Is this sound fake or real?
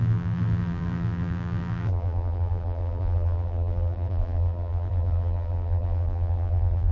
fake